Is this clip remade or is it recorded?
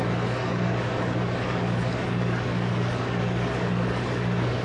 remade